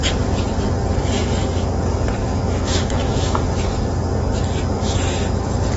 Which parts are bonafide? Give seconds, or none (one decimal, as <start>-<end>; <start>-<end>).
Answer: 0.0-2.2; 3.4-5.8